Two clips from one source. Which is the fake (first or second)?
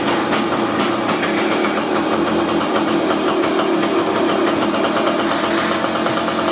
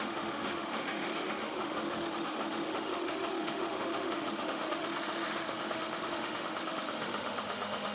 second